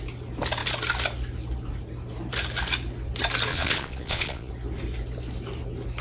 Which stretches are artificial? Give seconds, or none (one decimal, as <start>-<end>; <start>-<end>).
3.5-4.5